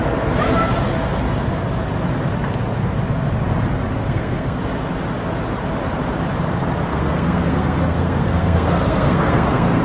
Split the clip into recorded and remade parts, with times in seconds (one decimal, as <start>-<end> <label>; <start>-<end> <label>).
0.0-4.0 recorded; 4.0-4.6 remade; 4.6-6.9 recorded; 6.9-9.8 remade